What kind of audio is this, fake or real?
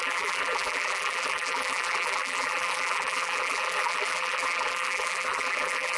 fake